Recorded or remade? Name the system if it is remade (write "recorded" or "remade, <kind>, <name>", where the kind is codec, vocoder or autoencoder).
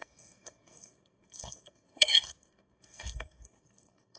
remade, codec, SNAC